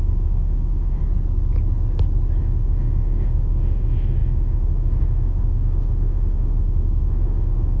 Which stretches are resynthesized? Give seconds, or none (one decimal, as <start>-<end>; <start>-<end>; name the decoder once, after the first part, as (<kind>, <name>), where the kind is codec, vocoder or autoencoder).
0.0-1.0 (autoencoder, DAC-VAE); 2.4-7.8